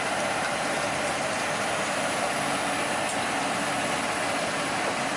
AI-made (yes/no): no